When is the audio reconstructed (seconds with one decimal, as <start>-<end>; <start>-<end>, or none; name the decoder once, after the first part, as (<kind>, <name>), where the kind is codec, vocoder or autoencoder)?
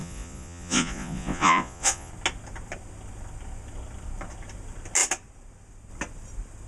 0.0-2.1 (vocoder, Vocos)